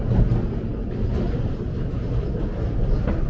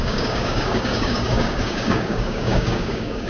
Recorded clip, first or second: first